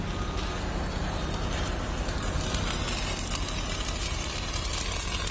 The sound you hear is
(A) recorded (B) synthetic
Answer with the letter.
A